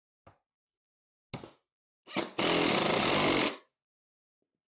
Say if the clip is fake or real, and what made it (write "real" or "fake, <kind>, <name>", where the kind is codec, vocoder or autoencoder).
real